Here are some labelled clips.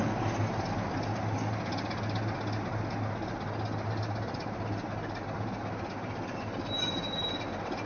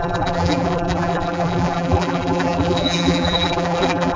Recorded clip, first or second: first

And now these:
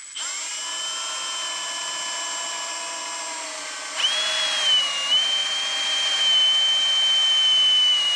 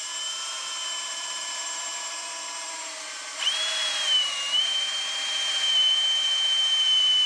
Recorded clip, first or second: first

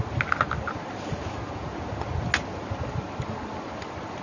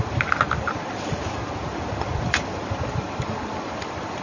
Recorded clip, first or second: first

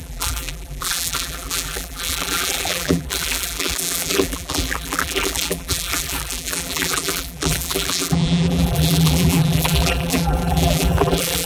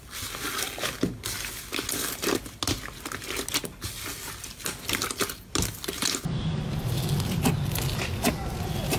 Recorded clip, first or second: second